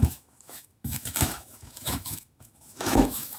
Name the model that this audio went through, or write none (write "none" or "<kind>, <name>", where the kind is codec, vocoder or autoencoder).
autoencoder, DAC-VAE